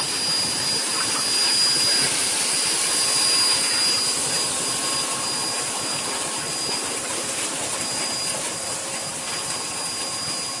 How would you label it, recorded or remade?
recorded